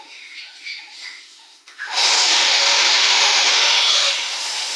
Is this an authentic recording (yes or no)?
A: no